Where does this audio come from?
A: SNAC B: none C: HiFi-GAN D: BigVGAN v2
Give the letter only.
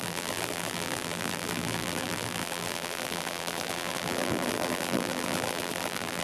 D